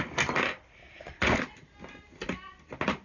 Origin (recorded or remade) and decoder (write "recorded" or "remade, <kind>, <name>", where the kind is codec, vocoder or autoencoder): recorded